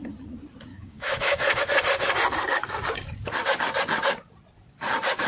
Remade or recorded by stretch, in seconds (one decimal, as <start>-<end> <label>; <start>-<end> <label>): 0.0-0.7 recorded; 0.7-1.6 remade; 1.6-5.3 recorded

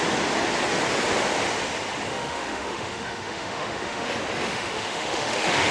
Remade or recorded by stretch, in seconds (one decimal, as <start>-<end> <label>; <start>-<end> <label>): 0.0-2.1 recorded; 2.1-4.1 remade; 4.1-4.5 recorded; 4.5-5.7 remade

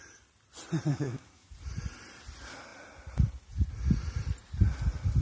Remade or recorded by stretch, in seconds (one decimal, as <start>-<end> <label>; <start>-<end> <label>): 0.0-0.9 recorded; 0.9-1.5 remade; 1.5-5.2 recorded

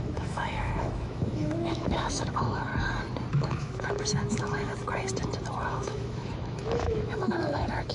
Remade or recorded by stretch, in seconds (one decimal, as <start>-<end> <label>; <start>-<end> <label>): 0.0-2.7 remade; 2.7-3.3 recorded; 3.3-4.7 remade; 4.7-5.7 recorded; 5.7-7.9 remade